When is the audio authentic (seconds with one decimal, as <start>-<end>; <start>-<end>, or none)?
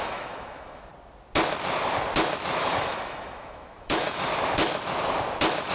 0.9-2.6; 4.3-5.7